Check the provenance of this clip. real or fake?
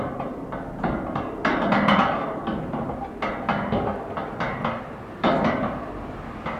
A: real